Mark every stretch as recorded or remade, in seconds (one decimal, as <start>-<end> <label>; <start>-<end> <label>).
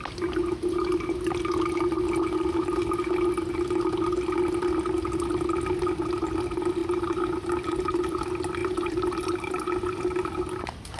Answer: 0.0-6.8 recorded; 6.8-8.2 remade; 8.2-8.6 recorded; 8.6-9.5 remade; 9.5-11.0 recorded